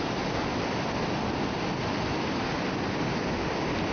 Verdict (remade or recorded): recorded